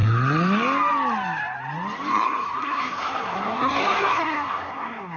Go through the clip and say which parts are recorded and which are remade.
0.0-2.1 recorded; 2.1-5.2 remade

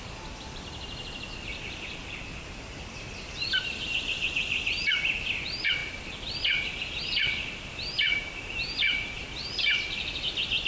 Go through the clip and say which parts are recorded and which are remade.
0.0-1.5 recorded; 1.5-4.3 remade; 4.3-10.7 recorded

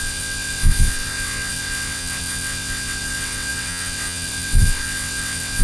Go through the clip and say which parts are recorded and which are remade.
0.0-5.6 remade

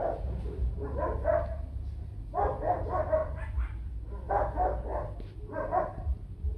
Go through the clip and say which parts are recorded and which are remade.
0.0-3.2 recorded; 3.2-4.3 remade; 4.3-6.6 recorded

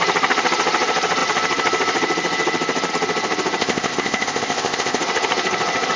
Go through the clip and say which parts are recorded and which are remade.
0.0-3.6 recorded; 3.6-5.0 remade; 5.0-6.0 recorded